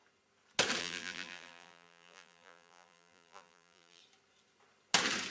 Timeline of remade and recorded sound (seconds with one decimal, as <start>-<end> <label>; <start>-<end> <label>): 0.0-0.8 recorded; 0.8-4.0 remade; 4.0-5.3 recorded